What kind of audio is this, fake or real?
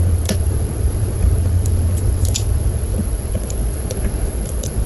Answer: fake